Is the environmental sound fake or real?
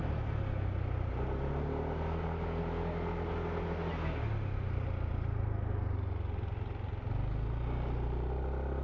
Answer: real